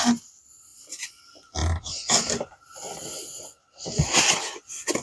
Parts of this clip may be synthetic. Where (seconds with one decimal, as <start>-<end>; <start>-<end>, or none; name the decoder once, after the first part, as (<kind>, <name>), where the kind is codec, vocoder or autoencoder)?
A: 0.7-1.2 (vocoder, BigVGAN v2)

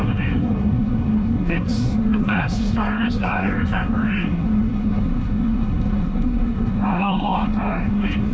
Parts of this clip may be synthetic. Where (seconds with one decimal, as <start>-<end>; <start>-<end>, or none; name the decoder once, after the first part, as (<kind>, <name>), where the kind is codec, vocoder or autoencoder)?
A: 0.0-8.3 (codec, SNAC)

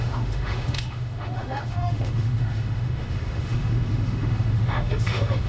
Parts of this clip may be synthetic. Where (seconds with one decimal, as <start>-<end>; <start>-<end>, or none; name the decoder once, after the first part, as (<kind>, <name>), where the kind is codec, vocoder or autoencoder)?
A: 0.0-5.5 (autoencoder, DAC-VAE)